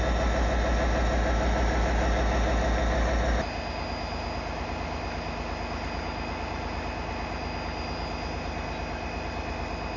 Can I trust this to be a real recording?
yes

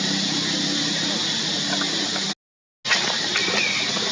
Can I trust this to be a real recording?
yes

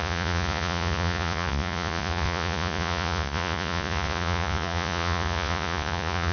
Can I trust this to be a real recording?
no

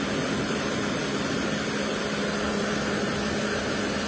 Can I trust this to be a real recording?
yes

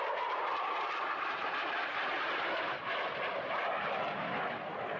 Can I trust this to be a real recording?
yes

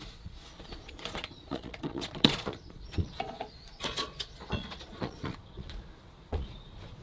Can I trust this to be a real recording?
no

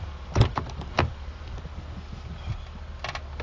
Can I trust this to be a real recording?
yes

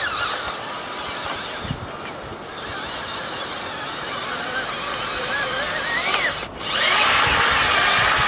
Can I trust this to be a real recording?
no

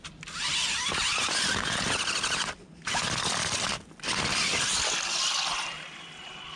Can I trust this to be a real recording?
yes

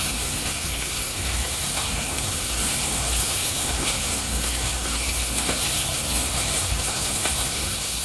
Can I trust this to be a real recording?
no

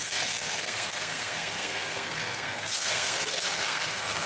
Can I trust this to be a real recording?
no